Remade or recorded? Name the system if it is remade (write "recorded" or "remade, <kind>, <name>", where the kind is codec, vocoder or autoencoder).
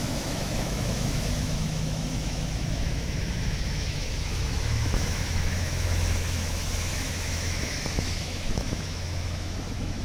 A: remade, autoencoder, DAC-VAE